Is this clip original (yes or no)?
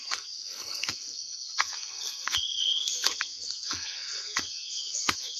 no